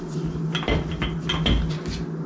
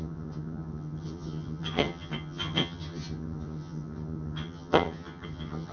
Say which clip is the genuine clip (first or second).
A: first